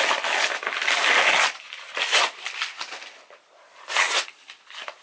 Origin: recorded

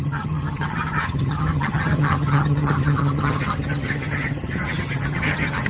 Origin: remade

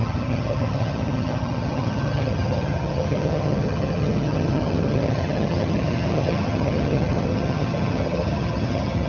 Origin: remade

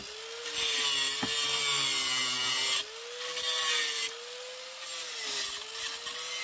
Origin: recorded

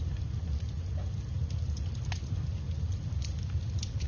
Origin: recorded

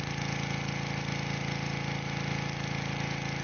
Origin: recorded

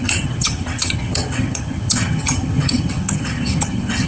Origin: remade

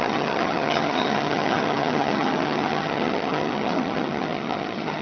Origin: remade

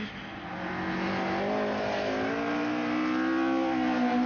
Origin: recorded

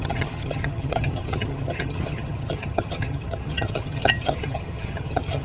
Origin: remade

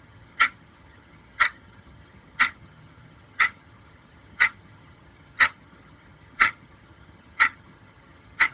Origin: remade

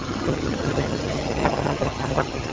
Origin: remade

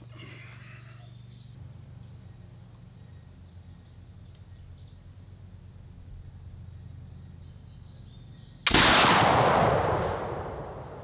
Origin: recorded